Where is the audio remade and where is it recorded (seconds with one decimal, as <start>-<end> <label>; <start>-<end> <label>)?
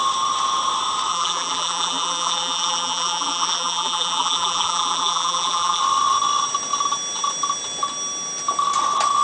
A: 0.0-1.1 recorded; 1.1-5.8 remade; 5.8-9.2 recorded